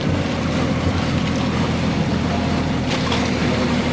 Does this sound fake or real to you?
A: real